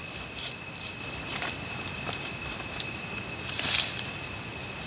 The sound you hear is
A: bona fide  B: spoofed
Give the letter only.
A